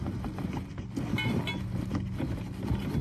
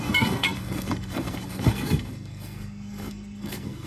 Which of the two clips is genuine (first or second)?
first